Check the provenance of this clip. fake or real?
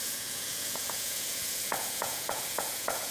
fake